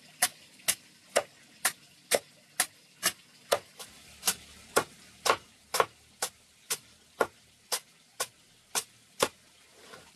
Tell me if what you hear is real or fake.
real